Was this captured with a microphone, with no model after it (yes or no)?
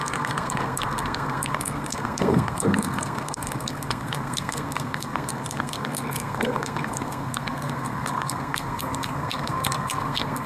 no